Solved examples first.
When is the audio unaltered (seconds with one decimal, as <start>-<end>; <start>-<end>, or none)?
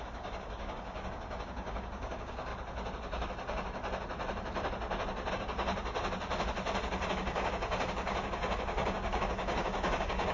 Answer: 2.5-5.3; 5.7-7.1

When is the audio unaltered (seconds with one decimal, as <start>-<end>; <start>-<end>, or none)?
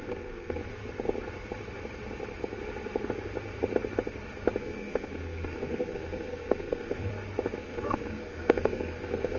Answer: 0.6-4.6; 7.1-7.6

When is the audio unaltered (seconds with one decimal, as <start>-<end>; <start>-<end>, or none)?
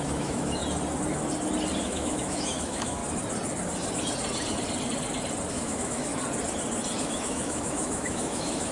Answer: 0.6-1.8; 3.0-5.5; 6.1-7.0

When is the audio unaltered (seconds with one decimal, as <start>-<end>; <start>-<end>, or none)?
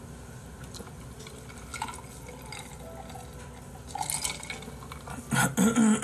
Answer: 0.0-6.0